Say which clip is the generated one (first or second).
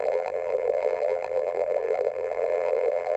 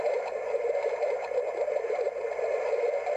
first